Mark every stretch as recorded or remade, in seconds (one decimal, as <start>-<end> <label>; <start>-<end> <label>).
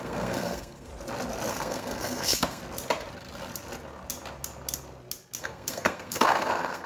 0.0-0.9 remade; 0.9-1.5 recorded; 1.5-2.6 remade; 2.6-5.4 recorded; 5.4-6.9 remade